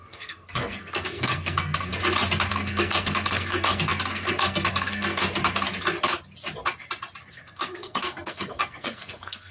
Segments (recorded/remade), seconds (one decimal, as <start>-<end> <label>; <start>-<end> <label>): 0.0-1.9 remade; 1.9-2.5 recorded; 2.5-5.2 remade; 5.2-7.3 recorded; 7.3-9.5 remade